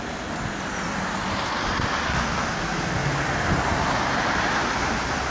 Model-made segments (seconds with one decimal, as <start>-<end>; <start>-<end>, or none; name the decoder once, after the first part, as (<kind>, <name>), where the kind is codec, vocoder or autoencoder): 3.0-5.3 (vocoder, BigVGAN v2)